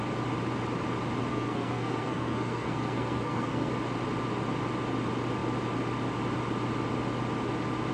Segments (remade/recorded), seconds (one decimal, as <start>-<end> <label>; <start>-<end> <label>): 0.0-1.3 recorded; 1.3-3.7 remade; 3.7-7.9 recorded